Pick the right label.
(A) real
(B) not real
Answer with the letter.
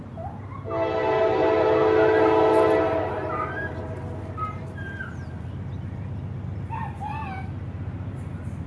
A